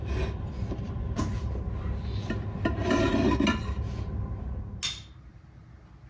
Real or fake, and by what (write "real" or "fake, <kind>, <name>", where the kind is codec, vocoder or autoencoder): real